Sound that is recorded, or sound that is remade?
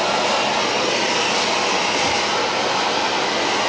recorded